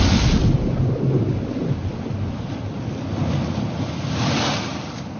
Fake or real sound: real